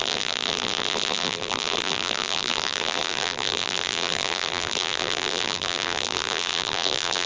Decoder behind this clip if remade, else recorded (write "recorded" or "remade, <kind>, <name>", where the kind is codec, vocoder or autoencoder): remade, vocoder, BigVGAN v2